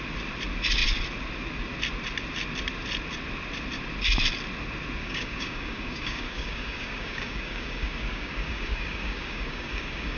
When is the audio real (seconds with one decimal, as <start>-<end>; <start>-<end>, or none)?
0.0-5.0